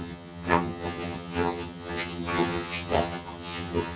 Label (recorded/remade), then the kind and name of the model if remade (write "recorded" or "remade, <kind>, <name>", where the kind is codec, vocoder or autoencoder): remade, vocoder, HiFi-GAN